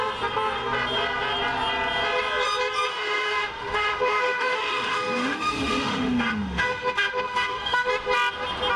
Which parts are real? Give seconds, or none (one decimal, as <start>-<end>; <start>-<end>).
0.0-2.9; 7.9-8.8